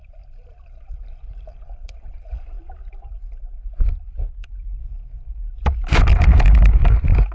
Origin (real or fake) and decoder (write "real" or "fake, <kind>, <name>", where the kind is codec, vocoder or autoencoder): fake, vocoder, BigVGAN v2